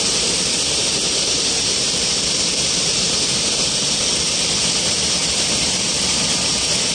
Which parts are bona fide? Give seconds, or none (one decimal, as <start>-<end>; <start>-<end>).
0.0-0.8; 4.7-6.9